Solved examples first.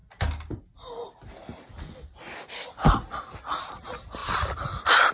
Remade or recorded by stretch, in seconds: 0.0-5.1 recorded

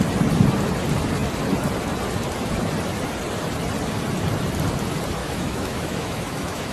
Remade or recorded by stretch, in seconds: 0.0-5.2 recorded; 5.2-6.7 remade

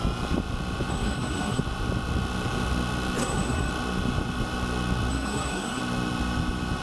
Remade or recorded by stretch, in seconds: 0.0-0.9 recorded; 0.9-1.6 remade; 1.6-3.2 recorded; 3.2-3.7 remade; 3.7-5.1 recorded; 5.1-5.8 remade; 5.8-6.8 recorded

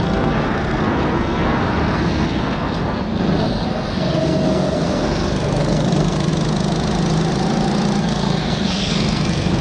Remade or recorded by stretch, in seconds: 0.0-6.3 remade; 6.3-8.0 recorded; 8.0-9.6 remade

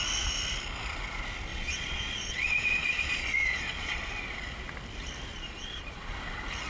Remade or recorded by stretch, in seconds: 0.0-1.5 recorded; 1.5-4.0 remade; 4.0-5.3 recorded; 5.3-6.1 remade; 6.1-6.7 recorded